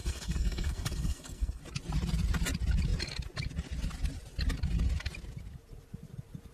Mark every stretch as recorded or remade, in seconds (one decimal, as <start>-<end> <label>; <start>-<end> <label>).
0.0-1.6 remade; 1.6-6.5 recorded